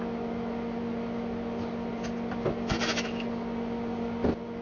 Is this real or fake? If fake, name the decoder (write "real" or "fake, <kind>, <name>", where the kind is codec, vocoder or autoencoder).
real